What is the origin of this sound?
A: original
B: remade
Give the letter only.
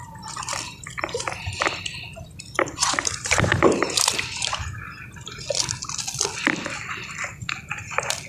B